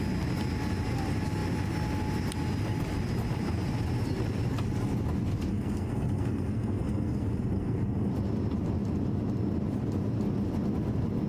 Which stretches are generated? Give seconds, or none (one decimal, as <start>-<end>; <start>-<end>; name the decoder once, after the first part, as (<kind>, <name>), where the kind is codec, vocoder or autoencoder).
5.5-8.1 (codec, SNAC)